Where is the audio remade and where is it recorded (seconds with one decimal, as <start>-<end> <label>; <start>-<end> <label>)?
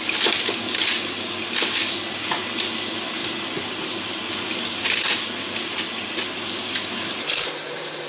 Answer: 0.0-3.2 recorded; 3.2-4.3 remade; 4.3-8.1 recorded